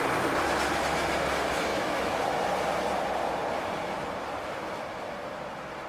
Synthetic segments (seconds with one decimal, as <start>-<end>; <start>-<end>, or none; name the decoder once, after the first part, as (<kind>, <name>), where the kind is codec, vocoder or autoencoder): 1.7-2.2 (autoencoder, DAC-VAE)